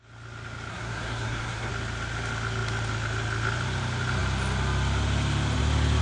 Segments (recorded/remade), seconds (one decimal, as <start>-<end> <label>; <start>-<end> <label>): 0.0-0.7 recorded; 0.7-1.7 remade; 1.7-6.0 recorded